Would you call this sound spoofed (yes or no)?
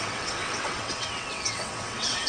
yes